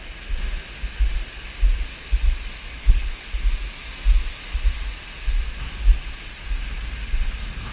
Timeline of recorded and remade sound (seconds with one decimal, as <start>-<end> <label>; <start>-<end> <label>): 0.0-2.8 recorded; 2.8-3.3 remade; 3.3-7.7 recorded